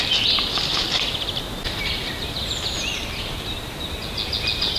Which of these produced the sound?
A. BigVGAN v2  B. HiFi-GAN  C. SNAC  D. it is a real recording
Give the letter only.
D